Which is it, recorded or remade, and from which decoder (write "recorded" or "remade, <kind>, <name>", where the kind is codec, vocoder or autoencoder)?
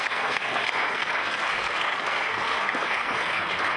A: remade, codec, SNAC